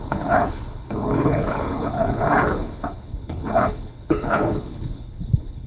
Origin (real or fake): fake